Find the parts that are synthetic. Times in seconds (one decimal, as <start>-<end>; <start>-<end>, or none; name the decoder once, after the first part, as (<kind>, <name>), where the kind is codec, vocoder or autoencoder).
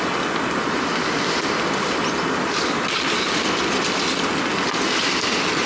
none